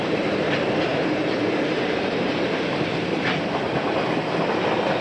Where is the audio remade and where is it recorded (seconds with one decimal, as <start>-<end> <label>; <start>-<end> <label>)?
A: 0.0-0.9 recorded; 0.9-2.3 remade; 2.3-5.0 recorded

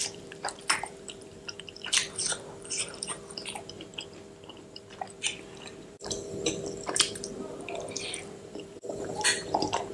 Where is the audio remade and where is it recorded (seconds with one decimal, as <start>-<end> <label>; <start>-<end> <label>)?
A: 0.0-3.9 remade; 3.9-4.6 recorded; 4.6-9.9 remade